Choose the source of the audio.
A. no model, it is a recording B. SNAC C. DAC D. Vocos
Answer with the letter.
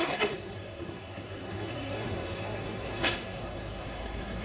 B